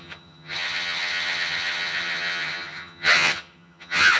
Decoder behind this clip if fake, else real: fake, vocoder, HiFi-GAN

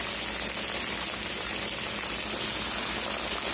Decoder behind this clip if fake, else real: real